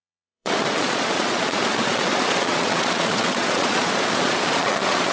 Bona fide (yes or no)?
no